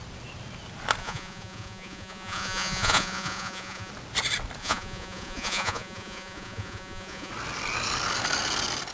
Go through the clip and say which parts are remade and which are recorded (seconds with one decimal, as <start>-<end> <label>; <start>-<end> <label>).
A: 0.0-1.0 recorded; 1.0-3.9 remade; 3.9-4.6 recorded; 4.6-7.3 remade; 7.3-8.9 recorded